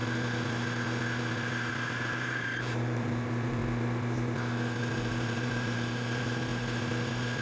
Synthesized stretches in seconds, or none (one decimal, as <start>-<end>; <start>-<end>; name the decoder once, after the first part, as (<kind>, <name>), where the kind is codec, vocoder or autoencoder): 1.7-3.6 (vocoder, BigVGAN v2); 4.8-6.5